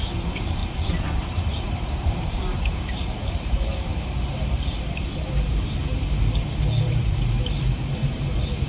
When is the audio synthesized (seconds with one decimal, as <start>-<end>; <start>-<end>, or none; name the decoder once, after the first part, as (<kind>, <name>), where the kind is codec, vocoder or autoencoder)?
0.0-0.6 (vocoder, BigVGAN v2); 1.6-3.9; 5.2-5.8; 6.8-8.7